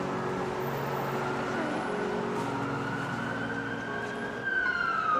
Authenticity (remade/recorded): recorded